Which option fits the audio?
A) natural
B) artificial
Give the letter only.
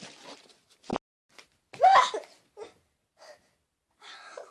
A